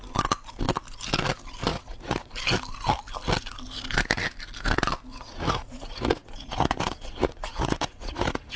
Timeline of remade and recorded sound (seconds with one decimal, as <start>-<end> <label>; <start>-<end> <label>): 0.0-1.7 recorded; 1.7-2.3 remade; 2.3-5.1 recorded; 5.1-8.6 remade